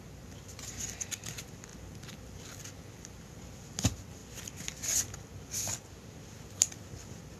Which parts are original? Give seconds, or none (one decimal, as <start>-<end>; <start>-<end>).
0.0-7.4